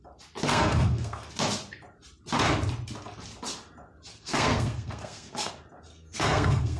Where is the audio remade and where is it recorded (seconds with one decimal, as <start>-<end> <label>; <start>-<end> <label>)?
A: 0.0-0.5 recorded; 0.5-1.3 remade; 1.3-4.1 recorded; 4.1-5.5 remade; 5.5-5.9 recorded; 5.9-6.8 remade